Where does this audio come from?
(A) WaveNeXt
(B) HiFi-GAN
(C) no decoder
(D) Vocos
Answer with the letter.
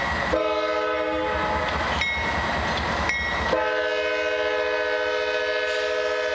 C